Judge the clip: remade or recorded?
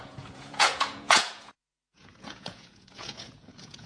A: remade